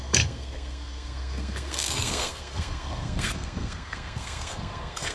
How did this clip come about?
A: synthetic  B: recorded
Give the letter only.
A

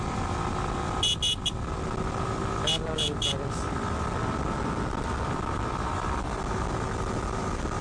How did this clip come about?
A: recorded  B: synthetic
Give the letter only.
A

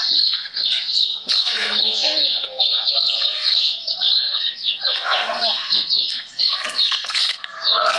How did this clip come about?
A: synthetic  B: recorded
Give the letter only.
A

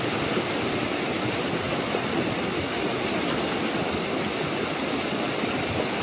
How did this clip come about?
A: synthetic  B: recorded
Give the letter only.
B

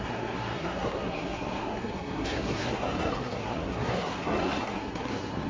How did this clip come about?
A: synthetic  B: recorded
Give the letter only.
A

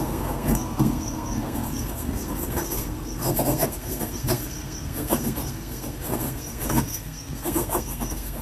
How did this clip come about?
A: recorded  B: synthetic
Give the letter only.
B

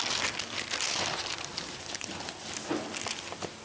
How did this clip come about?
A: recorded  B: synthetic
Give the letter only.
A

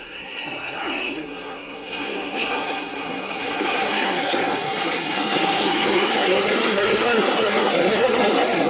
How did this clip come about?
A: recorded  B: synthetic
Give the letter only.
B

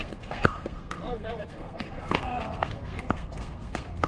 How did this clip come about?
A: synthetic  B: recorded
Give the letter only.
A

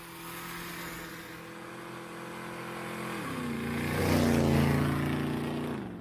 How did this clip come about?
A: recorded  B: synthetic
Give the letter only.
A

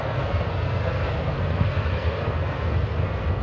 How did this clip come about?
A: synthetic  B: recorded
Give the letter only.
A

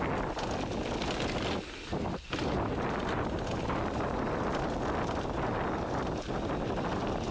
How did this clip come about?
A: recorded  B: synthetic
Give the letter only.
A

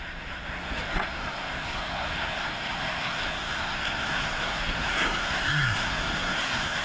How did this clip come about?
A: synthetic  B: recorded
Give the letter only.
A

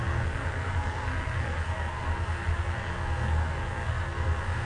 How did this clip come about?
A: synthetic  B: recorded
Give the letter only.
A